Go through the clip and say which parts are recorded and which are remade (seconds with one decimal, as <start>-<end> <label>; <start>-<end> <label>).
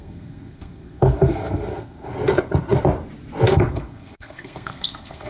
0.0-2.1 remade; 2.1-3.5 recorded; 3.5-5.3 remade